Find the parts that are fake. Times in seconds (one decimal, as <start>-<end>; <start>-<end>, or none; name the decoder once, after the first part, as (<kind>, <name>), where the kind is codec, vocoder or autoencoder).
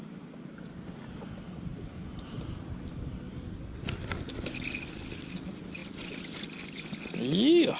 1.7-2.6 (vocoder, BigVGAN v2)